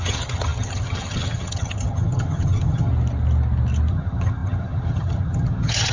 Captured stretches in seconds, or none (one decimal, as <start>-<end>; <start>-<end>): 2.9-3.9